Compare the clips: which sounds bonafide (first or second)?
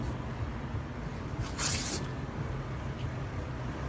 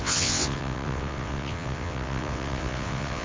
first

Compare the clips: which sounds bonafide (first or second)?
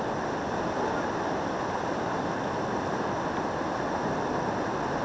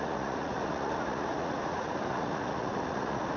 first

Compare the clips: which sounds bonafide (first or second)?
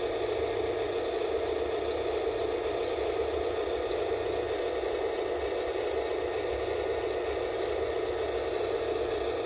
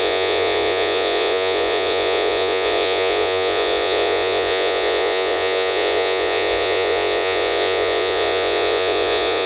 first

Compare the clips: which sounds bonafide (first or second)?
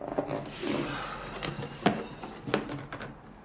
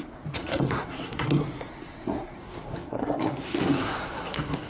first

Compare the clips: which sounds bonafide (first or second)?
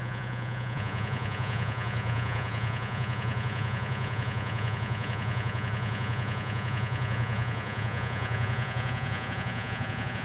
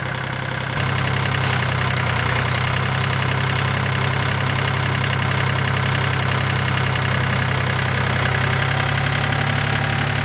second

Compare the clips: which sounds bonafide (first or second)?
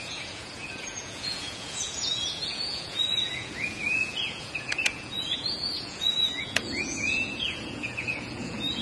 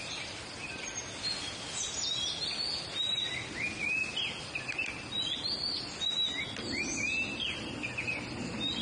second